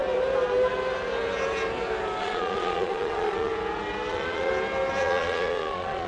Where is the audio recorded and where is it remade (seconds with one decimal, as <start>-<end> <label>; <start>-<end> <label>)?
0.0-2.2 recorded; 2.2-3.5 remade; 3.5-4.1 recorded; 4.1-4.5 remade; 4.5-5.0 recorded; 5.0-6.1 remade

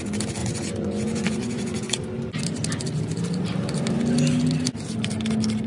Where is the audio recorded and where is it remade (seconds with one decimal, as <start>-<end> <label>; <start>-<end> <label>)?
0.0-0.4 recorded; 0.4-2.0 remade; 2.0-5.7 recorded

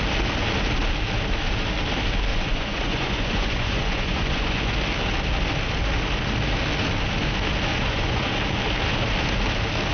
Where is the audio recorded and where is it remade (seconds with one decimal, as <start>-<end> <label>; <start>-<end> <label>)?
0.0-2.3 recorded; 2.3-4.7 remade; 4.7-7.7 recorded; 7.7-8.3 remade; 8.3-9.9 recorded

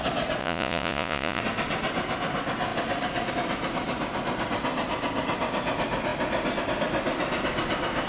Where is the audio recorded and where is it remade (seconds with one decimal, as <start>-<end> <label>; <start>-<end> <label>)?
0.0-0.4 recorded; 0.4-1.4 remade; 1.4-8.1 recorded

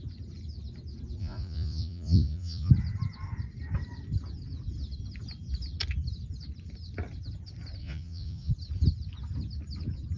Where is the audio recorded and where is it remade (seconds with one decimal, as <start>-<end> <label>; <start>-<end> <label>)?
0.0-1.2 recorded; 1.2-2.7 remade; 2.7-7.8 recorded; 7.8-8.5 remade; 8.5-10.2 recorded

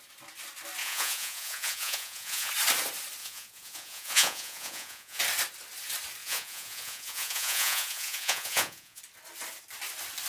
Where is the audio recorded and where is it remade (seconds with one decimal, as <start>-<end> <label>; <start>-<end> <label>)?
0.0-0.8 recorded; 0.8-2.5 remade; 2.5-3.2 recorded; 3.2-5.2 remade; 5.2-6.2 recorded; 6.2-9.0 remade; 9.0-10.3 recorded

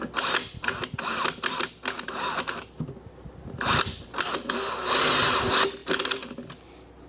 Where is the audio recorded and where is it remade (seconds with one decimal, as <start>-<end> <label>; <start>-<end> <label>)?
0.0-7.1 recorded

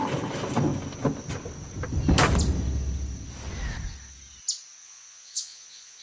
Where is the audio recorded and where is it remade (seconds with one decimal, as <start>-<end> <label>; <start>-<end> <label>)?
0.0-4.8 recorded; 4.8-6.0 remade